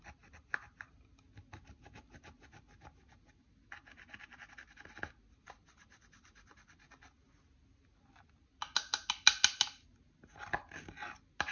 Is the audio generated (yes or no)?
no